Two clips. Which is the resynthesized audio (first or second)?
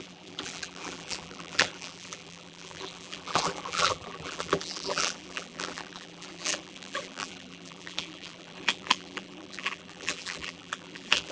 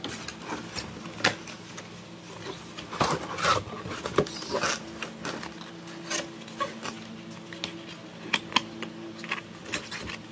first